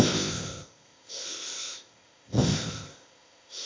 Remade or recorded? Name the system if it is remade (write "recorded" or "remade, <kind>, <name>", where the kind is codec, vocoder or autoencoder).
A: remade, codec, ZipCodec